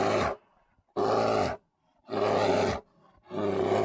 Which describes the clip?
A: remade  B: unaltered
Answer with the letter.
B